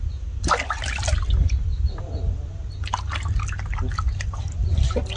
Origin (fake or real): real